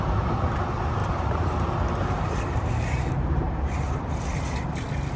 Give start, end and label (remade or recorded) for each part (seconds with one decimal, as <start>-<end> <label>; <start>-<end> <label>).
0.0-1.0 recorded; 1.0-4.1 remade; 4.1-5.2 recorded